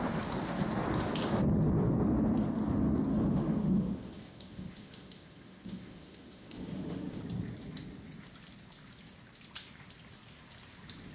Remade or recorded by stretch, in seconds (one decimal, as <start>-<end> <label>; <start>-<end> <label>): 0.0-3.1 recorded; 3.1-7.2 remade; 7.2-11.1 recorded